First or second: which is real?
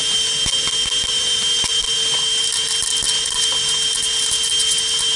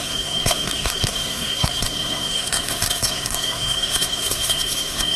first